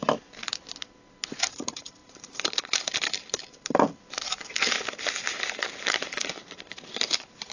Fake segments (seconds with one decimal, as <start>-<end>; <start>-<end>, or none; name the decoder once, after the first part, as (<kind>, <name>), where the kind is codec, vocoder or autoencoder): 1.5-3.9 (vocoder, BigVGAN v2); 4.9-7.5